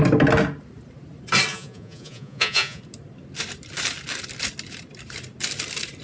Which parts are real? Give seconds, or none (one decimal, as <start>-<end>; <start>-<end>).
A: 0.0-1.5; 2.8-6.0